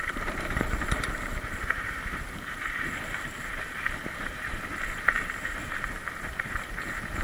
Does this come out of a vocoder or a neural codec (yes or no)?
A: yes